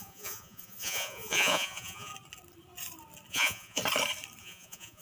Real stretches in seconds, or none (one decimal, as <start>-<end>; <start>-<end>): 2.1-3.3; 3.8-4.4